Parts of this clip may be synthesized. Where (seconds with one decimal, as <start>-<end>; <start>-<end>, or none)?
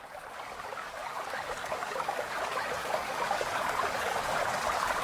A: 0.0-5.0